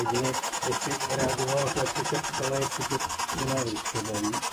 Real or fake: real